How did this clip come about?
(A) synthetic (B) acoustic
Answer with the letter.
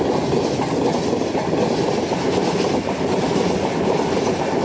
B